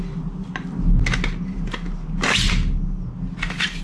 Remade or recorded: recorded